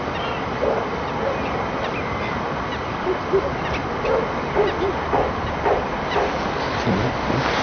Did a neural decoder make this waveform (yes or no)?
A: no